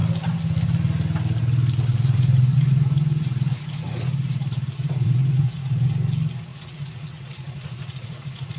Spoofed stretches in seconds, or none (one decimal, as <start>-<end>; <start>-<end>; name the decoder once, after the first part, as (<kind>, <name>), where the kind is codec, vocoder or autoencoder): 1.9-5.7 (vocoder, Vocos); 6.5-8.6